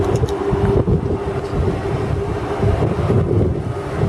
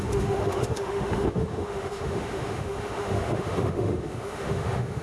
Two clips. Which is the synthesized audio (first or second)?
second